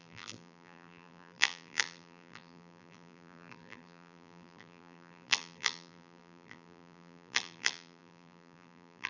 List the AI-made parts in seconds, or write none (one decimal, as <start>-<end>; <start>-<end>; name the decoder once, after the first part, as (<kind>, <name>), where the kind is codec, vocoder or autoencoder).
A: 0.0-9.1 (vocoder, BigVGAN v2)